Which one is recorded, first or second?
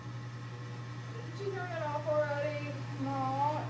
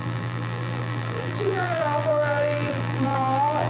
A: first